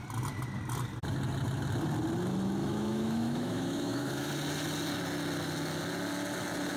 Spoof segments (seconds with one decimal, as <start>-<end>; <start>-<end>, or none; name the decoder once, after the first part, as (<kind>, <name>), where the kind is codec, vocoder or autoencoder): 2.6-4.3 (autoencoder, DAC-VAE)